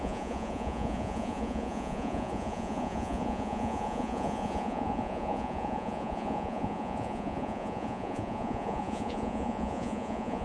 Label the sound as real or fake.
fake